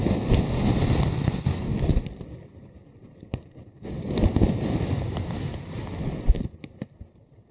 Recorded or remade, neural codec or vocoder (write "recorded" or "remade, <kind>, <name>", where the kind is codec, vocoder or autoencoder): remade, vocoder, BigVGAN v2